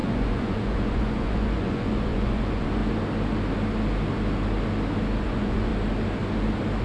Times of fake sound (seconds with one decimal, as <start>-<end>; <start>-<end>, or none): 0.0-2.8; 5.2-5.7